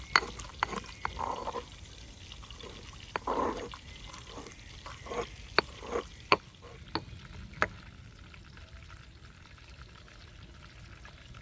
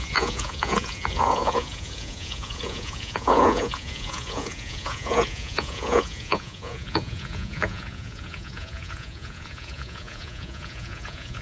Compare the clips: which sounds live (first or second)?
first